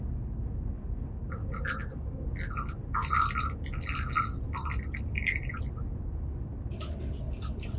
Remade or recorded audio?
recorded